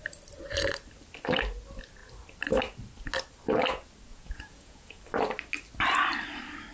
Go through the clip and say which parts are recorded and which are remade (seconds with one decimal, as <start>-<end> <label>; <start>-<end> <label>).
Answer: 0.0-4.1 recorded; 4.1-5.0 remade; 5.0-6.7 recorded